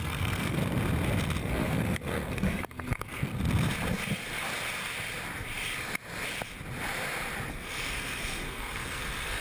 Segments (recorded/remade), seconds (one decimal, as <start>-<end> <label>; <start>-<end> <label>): 0.0-0.6 remade; 0.6-1.4 recorded; 1.4-3.3 remade; 3.3-7.5 recorded; 7.5-9.4 remade